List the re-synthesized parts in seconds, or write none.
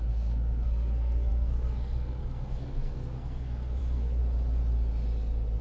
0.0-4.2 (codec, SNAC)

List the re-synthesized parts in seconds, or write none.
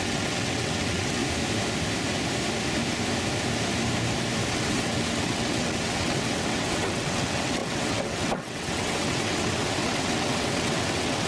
0.0-1.2 (vocoder, WaveNeXt); 4.5-11.3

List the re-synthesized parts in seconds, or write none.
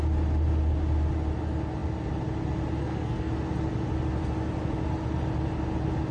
2.8-3.3 (codec, SNAC)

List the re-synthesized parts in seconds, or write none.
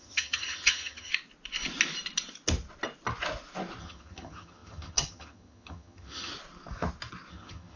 0.0-1.1 (vocoder, HiFi-GAN); 3.8-6.3; 7.3-7.8